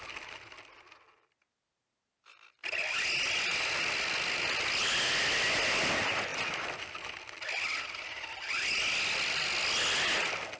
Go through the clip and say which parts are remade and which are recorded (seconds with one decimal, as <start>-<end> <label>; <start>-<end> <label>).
0.0-10.6 recorded